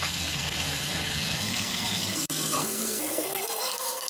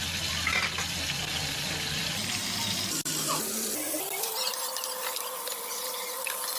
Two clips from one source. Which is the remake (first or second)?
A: first